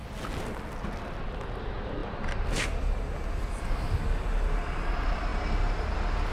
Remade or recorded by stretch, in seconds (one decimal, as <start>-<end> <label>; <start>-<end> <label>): 0.0-6.3 recorded